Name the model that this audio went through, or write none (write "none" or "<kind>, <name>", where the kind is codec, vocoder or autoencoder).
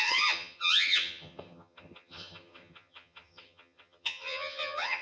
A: vocoder, HiFi-GAN